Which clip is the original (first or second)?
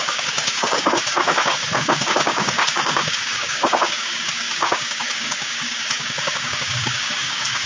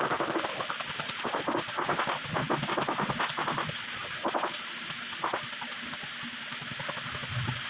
second